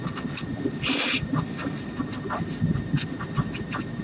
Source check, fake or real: real